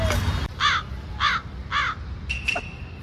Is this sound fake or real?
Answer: real